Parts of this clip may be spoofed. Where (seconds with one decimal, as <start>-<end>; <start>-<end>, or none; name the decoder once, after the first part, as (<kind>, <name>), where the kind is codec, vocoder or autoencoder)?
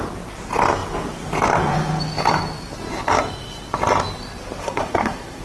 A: 4.6-5.4 (codec, SNAC)